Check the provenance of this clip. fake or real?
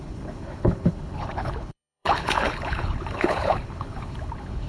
fake